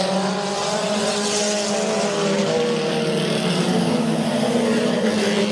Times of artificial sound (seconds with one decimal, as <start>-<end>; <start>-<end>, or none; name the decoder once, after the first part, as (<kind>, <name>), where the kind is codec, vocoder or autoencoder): 0.6-1.1 (vocoder, Vocos)